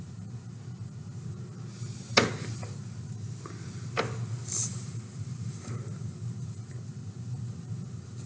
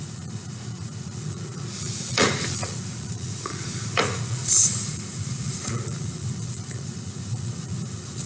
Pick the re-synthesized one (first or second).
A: second